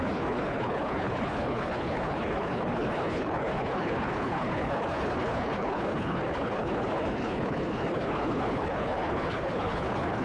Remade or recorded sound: remade